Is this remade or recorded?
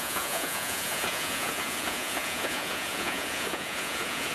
remade